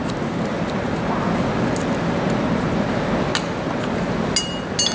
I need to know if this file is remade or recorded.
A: recorded